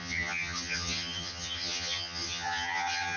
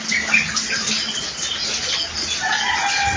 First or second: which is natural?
second